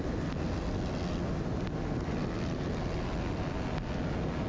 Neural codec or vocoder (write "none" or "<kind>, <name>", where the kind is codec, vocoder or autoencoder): none